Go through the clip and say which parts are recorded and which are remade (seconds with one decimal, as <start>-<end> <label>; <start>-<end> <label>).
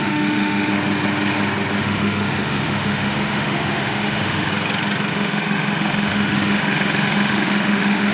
0.0-0.7 remade; 0.7-1.8 recorded; 1.8-4.5 remade; 4.5-5.1 recorded; 5.1-8.1 remade